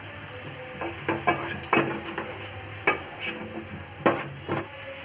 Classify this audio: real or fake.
real